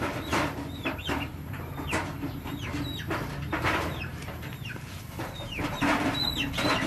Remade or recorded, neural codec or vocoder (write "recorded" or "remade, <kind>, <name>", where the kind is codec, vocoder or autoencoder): remade, vocoder, BigVGAN v2